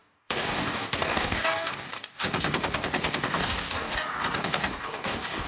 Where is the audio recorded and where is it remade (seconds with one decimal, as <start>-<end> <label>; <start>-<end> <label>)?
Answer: 0.0-5.5 remade